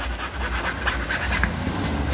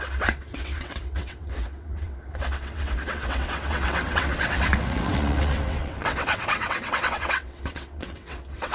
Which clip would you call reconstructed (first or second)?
second